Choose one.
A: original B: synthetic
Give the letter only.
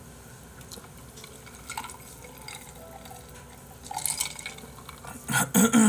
A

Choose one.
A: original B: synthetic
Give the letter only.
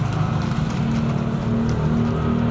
A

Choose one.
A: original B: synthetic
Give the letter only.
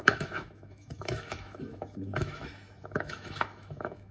B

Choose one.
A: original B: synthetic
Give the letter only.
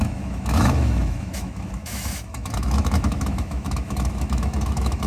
B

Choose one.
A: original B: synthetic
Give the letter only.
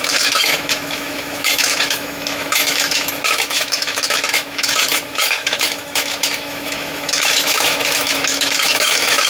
B